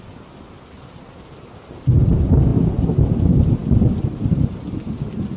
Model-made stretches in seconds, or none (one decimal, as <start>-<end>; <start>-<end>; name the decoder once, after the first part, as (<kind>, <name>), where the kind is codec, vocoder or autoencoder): none